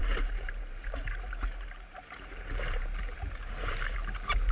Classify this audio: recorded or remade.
remade